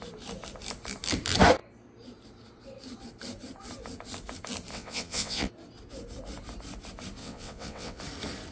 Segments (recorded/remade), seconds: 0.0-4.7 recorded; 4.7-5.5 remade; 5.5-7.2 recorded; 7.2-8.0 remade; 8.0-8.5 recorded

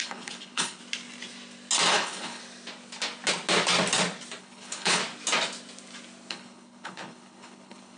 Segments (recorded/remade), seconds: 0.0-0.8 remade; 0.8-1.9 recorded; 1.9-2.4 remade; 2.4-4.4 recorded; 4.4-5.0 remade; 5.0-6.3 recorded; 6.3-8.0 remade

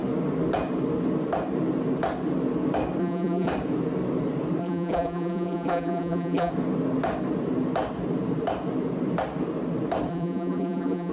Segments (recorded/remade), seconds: 0.0-3.0 recorded; 3.0-3.5 remade; 3.5-4.6 recorded; 4.6-6.5 remade; 6.5-10.1 recorded; 10.1-11.1 remade

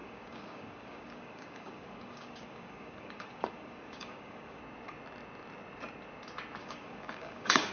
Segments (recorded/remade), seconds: 0.0-4.6 remade; 4.6-6.6 recorded; 6.6-7.7 remade